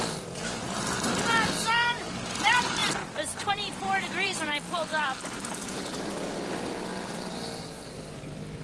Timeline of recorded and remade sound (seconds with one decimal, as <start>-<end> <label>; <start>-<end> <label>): 0.0-8.6 remade